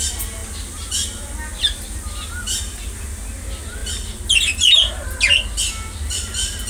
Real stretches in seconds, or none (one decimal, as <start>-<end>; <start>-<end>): 0.0-6.7